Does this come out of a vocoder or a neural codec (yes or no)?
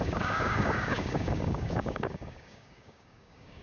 yes